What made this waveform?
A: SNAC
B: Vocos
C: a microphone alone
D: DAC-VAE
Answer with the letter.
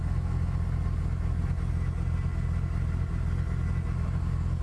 C